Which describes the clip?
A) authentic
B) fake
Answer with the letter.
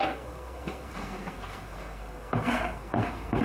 B